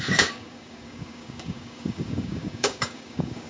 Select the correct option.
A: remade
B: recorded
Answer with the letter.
A